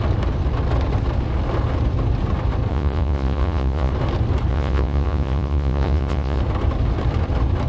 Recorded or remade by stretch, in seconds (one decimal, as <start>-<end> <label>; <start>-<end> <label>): 0.0-2.7 recorded; 2.7-3.9 remade; 3.9-4.5 recorded; 4.5-6.4 remade; 6.4-7.7 recorded